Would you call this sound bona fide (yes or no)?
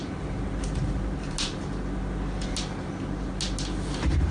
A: yes